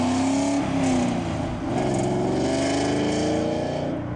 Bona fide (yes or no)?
yes